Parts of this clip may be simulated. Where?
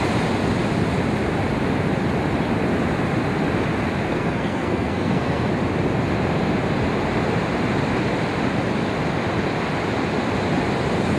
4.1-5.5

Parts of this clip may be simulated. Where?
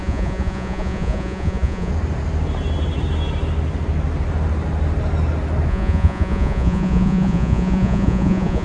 0.0-1.9; 5.7-8.6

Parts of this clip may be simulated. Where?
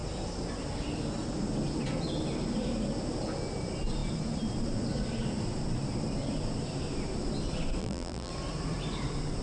7.8-8.3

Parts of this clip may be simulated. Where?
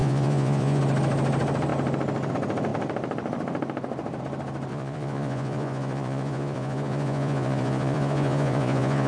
0.0-0.8; 4.7-9.1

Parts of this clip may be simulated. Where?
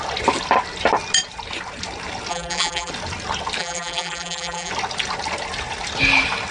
2.3-2.9; 3.6-4.7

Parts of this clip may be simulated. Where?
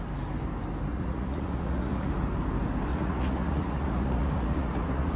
0.9-2.1; 2.9-5.2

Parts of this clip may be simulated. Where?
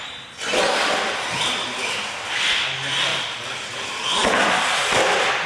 none